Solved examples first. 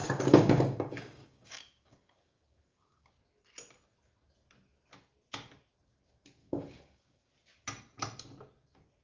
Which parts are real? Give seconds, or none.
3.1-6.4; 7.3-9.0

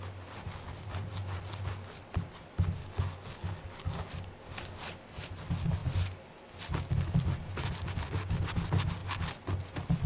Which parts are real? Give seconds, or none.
0.0-2.8; 4.8-10.1

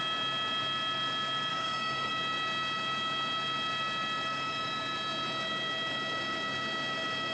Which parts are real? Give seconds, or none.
0.0-1.5; 2.1-7.3

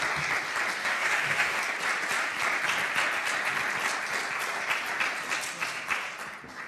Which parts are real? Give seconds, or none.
0.0-0.8; 1.6-6.7

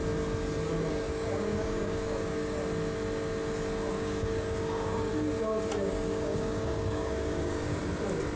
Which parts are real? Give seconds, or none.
0.0-0.9; 2.6-3.9; 5.1-5.8; 7.8-8.4